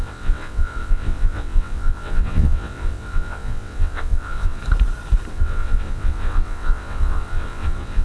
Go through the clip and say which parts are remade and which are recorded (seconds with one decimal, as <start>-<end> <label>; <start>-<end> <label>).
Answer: 0.0-4.6 remade; 4.6-5.3 recorded; 5.3-8.0 remade